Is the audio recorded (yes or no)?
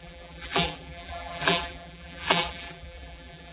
no